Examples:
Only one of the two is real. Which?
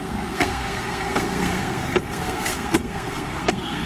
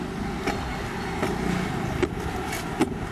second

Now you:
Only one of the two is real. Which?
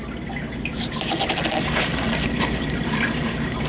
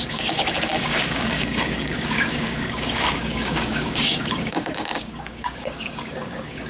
first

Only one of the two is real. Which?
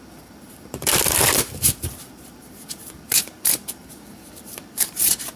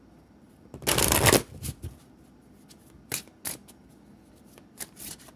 second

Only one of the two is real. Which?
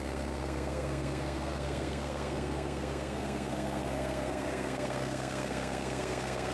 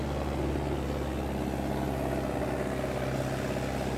second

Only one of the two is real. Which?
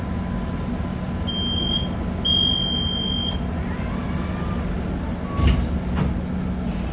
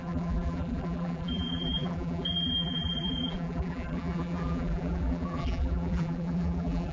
first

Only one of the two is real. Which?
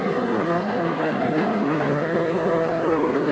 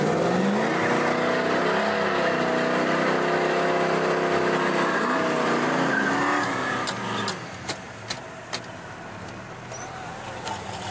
second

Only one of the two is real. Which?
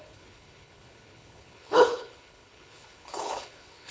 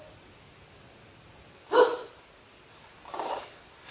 second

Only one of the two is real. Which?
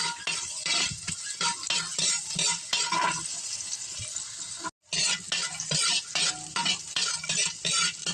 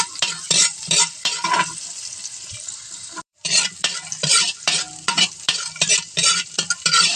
first